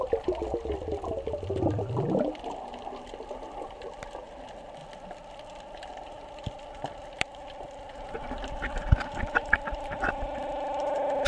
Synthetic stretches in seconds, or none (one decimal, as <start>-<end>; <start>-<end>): none